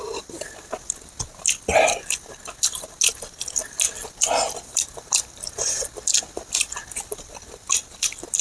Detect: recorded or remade recorded